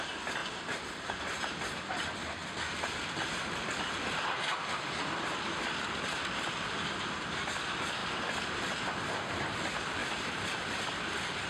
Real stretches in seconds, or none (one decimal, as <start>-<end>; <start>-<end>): 0.0-0.4; 1.4-10.0; 10.9-11.5